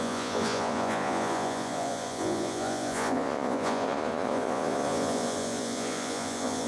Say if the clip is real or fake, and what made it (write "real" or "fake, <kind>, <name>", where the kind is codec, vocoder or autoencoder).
fake, vocoder, Vocos